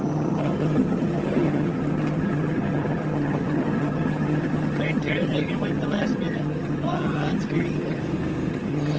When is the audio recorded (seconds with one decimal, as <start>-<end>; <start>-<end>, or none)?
8.0-8.5